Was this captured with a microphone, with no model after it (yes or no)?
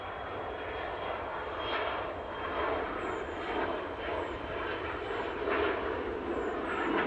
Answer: yes